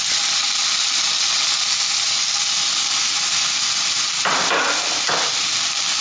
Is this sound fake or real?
real